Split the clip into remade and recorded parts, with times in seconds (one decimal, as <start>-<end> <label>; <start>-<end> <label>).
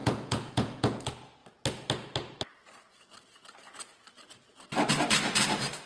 0.0-1.0 remade; 1.0-5.9 recorded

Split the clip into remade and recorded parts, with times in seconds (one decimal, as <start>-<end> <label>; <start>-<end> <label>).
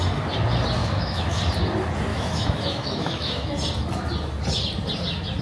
0.0-0.8 recorded; 0.8-1.4 remade; 1.4-2.1 recorded; 2.1-3.5 remade; 3.5-5.4 recorded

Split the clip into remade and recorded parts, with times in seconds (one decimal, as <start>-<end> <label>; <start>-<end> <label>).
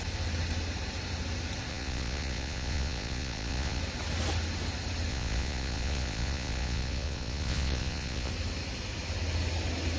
0.0-1.7 recorded; 1.7-3.8 remade; 3.8-5.1 recorded; 5.1-8.3 remade; 8.3-10.0 recorded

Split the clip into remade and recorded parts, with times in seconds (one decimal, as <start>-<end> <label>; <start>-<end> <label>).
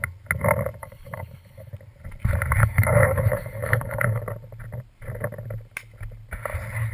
0.0-0.8 recorded; 0.8-1.7 remade; 1.7-2.6 recorded; 2.6-4.2 remade; 4.2-6.9 recorded